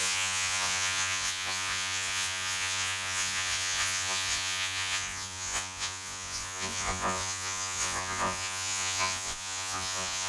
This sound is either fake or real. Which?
fake